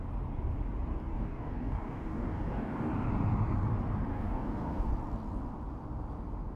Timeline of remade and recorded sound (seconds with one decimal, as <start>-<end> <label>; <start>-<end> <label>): 0.0-0.9 recorded; 0.9-2.9 remade; 2.9-4.1 recorded; 4.1-4.9 remade; 4.9-6.6 recorded